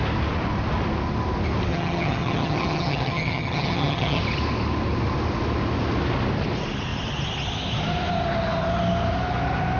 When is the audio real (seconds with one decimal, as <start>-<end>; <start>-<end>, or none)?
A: 0.0-1.7; 4.2-9.8